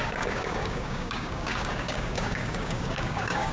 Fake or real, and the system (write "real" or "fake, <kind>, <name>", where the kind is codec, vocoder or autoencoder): fake, codec, DAC